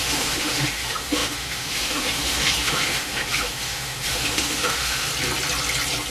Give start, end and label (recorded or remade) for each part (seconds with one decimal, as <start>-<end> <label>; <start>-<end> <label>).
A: 0.0-5.1 remade; 5.1-6.1 recorded